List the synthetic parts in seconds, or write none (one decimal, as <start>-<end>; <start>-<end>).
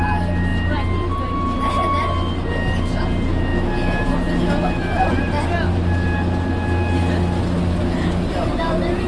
none